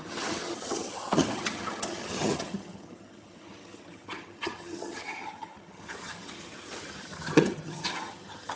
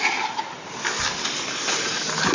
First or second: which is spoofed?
first